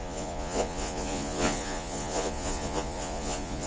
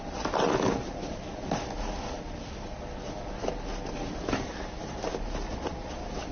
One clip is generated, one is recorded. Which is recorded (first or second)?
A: second